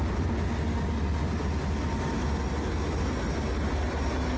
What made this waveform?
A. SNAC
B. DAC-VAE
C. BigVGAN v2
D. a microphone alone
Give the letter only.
D